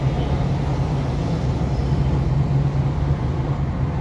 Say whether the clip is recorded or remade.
recorded